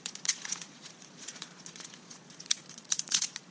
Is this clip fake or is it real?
fake